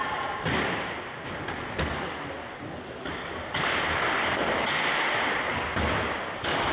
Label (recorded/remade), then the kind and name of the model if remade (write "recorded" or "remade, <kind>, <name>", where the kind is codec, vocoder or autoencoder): recorded